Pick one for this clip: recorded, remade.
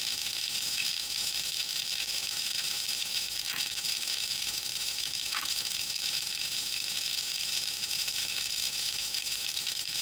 remade